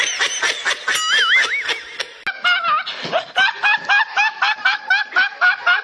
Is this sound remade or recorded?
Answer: recorded